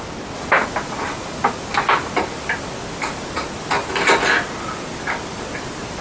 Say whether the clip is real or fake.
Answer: real